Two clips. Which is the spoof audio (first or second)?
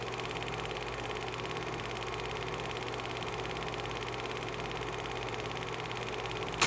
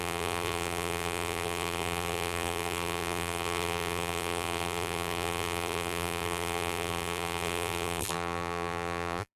second